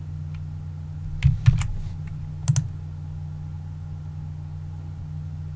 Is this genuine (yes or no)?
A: yes